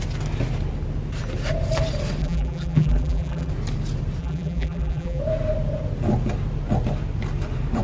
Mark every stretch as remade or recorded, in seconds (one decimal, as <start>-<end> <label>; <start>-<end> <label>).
0.0-2.2 recorded; 2.2-3.5 remade; 3.5-4.2 recorded; 4.2-5.2 remade; 5.2-7.8 recorded